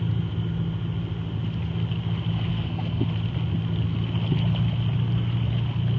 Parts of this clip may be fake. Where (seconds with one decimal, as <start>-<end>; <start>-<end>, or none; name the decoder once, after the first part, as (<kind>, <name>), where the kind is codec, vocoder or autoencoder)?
2.5-3.1 (codec, SNAC)